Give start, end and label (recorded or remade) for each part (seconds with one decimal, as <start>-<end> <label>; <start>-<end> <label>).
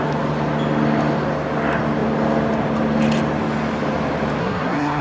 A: 0.0-4.4 recorded; 4.4-5.0 remade